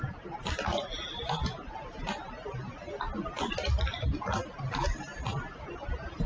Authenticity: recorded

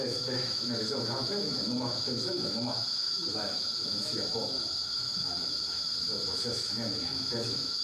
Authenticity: remade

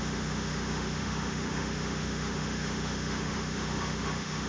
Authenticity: remade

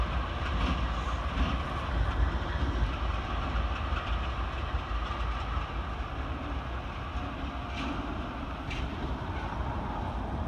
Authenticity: recorded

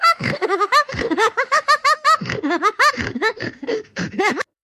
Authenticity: remade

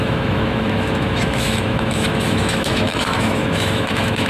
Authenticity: remade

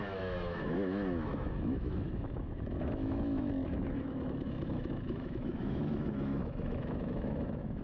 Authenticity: remade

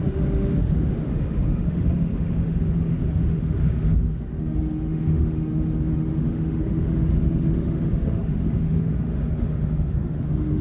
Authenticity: remade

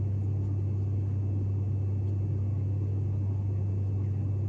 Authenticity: recorded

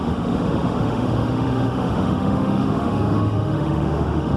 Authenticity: remade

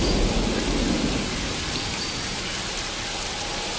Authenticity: recorded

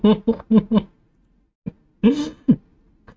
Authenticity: recorded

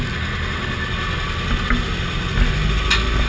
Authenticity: recorded